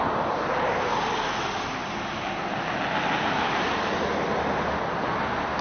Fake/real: real